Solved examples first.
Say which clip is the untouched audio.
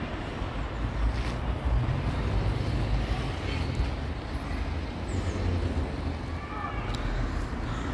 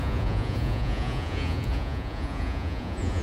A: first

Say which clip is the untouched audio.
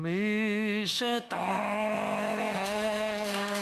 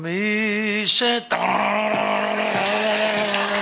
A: second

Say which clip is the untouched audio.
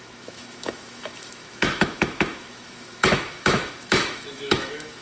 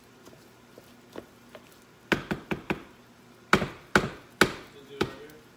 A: second